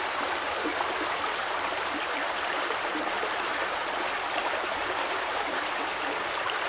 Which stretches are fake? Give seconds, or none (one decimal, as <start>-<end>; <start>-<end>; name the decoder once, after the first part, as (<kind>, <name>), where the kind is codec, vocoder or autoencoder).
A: 0.0-0.7 (vocoder, BigVGAN v2); 1.3-3.8; 4.4-6.7